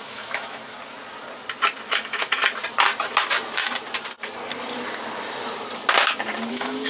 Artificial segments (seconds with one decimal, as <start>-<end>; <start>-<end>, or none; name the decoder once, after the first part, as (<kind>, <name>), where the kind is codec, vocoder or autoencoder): 0.0-0.6 (autoencoder, DAC-VAE); 1.9-2.4; 6.5-6.9